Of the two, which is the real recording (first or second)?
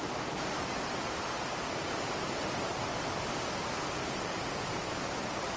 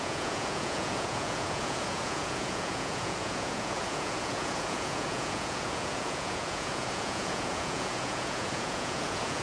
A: first